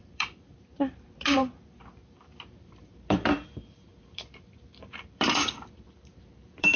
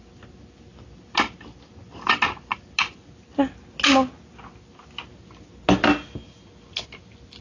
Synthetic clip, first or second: first